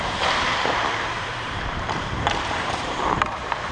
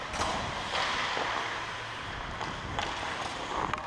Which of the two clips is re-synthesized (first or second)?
first